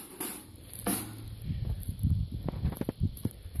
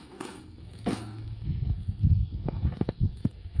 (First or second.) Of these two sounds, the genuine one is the first